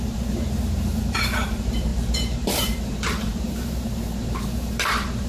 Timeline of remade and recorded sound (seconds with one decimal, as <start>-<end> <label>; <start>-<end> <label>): 0.0-5.3 remade